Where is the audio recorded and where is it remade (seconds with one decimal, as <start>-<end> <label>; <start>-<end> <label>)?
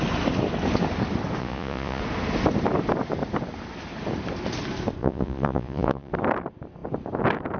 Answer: 0.0-1.4 recorded; 1.4-2.0 remade; 2.0-5.0 recorded; 5.0-6.1 remade; 6.1-7.6 recorded